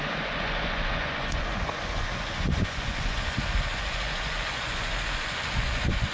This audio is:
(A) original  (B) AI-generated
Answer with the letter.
B